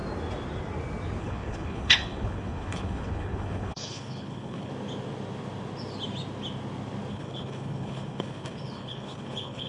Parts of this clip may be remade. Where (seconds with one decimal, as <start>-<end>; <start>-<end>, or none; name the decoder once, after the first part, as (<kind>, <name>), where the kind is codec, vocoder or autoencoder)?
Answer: 1.2-4.7 (codec, HILCodec); 7.1-9.7